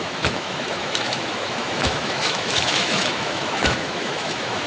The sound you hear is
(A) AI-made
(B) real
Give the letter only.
A